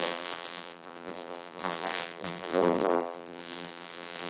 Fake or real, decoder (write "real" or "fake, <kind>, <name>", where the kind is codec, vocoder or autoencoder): fake, vocoder, BigVGAN v2